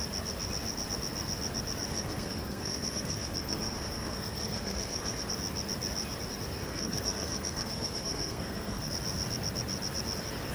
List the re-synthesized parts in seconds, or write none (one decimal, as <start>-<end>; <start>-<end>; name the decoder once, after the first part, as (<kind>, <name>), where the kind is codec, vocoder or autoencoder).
1.9-5.3 (codec, SNAC); 6.6-8.9